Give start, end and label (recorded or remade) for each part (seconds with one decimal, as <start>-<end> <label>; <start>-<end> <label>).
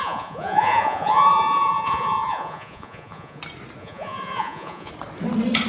0.0-3.4 remade; 3.4-3.8 recorded; 3.8-4.9 remade; 4.9-5.7 recorded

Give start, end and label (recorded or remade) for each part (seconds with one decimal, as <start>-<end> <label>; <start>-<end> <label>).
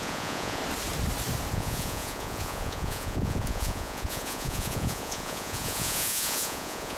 0.0-0.6 remade; 0.6-1.5 recorded; 1.5-7.0 remade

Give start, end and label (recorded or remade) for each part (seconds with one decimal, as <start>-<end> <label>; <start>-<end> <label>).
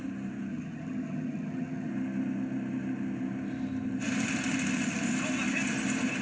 0.0-0.5 recorded; 0.5-1.9 remade; 1.9-6.2 recorded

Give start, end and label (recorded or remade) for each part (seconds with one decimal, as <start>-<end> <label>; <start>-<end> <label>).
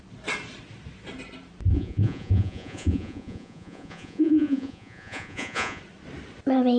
0.0-1.7 recorded; 1.7-5.8 remade; 5.8-6.8 recorded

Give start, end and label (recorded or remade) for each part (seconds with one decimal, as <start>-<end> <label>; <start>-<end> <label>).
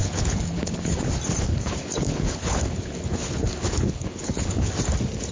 0.0-1.1 remade; 1.1-1.5 recorded; 1.5-4.7 remade; 4.7-5.3 recorded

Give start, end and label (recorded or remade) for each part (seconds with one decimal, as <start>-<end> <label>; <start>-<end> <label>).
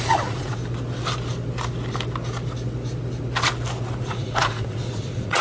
0.0-0.6 remade; 0.6-3.8 recorded; 3.8-5.4 remade